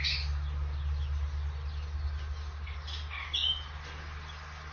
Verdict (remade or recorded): recorded